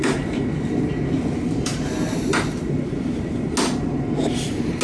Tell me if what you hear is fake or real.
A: real